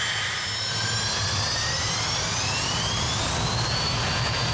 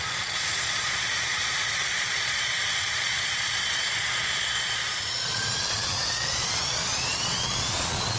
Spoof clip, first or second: second